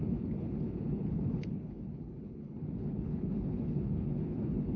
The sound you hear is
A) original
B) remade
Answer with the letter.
B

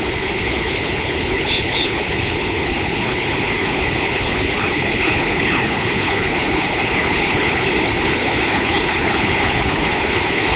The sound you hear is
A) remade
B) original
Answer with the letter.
A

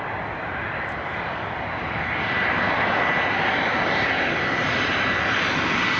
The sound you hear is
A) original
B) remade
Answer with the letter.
A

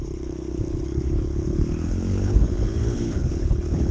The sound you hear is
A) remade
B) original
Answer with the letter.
A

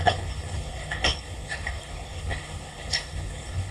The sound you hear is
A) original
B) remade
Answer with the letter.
B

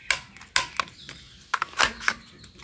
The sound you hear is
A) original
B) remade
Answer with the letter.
A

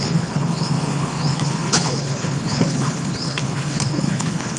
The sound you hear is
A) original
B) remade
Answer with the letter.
B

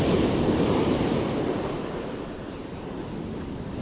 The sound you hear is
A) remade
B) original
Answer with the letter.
B